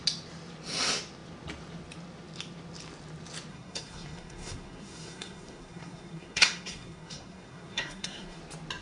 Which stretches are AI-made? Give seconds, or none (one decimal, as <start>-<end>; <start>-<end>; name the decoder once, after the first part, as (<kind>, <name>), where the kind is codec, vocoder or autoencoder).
3.5-8.4 (codec, SNAC)